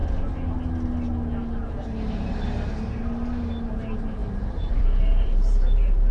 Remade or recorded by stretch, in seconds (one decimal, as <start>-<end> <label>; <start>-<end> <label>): 0.0-3.7 recorded; 3.7-6.1 remade